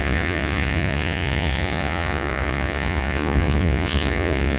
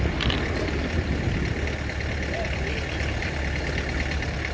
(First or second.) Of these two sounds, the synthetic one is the first